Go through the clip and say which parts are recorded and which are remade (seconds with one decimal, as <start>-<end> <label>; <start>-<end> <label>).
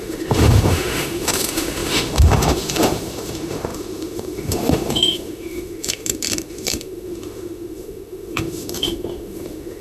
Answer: 0.0-9.8 remade